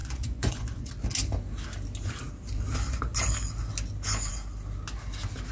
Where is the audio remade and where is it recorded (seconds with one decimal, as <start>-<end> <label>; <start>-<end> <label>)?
0.0-0.9 remade; 0.9-5.5 recorded